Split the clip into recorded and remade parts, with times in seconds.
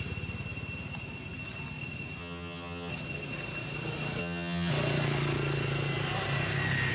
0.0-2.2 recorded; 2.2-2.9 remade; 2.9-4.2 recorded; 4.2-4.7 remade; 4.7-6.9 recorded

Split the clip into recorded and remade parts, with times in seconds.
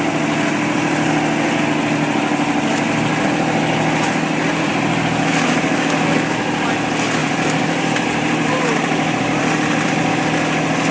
0.0-7.2 recorded; 7.2-10.1 remade; 10.1-10.9 recorded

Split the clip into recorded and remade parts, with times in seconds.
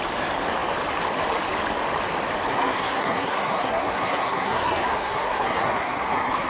0.0-2.5 recorded; 2.5-6.5 remade